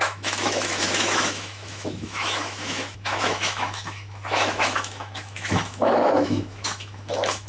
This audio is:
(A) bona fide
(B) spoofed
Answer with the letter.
B